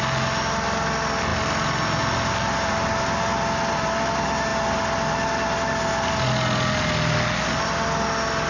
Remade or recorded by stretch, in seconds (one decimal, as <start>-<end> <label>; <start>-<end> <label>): 0.0-8.5 recorded